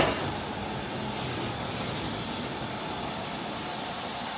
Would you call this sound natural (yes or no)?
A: yes